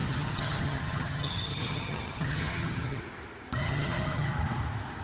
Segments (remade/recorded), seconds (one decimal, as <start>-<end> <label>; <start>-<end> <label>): 0.0-3.0 remade; 3.0-3.6 recorded; 3.6-4.3 remade; 4.3-5.0 recorded